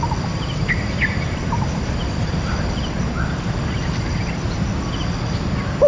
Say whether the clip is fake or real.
real